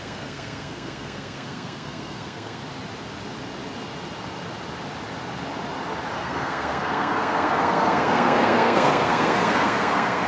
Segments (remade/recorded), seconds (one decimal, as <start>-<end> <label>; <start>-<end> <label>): 0.0-2.6 remade; 2.6-6.1 recorded; 6.1-10.3 remade